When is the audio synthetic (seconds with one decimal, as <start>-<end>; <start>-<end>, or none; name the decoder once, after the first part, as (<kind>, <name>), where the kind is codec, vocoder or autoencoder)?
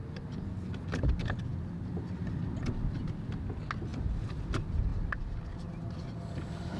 none